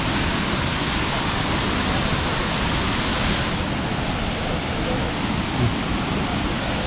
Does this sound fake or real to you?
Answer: real